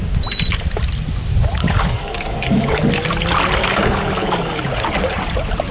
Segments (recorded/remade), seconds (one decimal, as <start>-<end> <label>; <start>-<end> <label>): 0.0-1.6 recorded; 1.6-2.8 remade; 2.8-3.6 recorded; 3.6-4.6 remade; 4.6-5.7 recorded